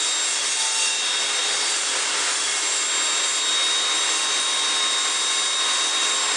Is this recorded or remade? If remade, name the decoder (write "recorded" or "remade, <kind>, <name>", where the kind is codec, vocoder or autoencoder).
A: recorded